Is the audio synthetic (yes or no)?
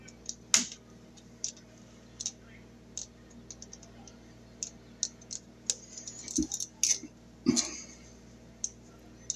no